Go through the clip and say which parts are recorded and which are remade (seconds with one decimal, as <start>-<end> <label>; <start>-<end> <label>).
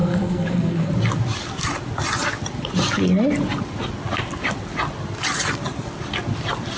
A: 0.0-0.9 remade; 0.9-6.8 recorded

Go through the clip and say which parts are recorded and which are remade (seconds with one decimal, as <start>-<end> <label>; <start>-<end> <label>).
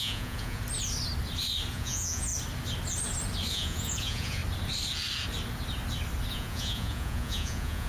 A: 0.0-0.6 remade; 0.6-1.7 recorded; 1.7-2.3 remade; 2.3-3.5 recorded; 3.5-4.4 remade; 4.4-6.3 recorded; 6.3-7.9 remade